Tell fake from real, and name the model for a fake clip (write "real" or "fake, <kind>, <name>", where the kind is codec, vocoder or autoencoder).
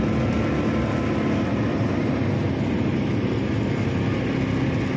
real